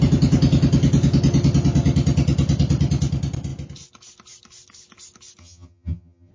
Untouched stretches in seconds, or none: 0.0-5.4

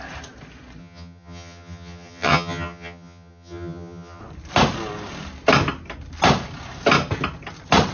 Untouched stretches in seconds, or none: 0.0-0.8; 4.2-7.9